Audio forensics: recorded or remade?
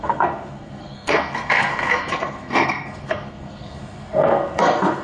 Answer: remade